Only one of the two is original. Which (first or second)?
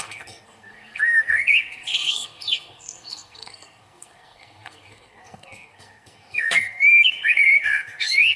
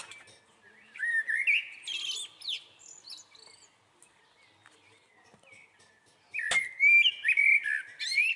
second